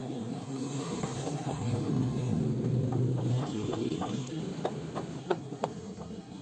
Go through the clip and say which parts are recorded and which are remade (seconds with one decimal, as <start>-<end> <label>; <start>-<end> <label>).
0.0-2.4 remade; 2.4-3.3 recorded; 3.3-4.4 remade; 4.4-5.2 recorded; 5.2-6.4 remade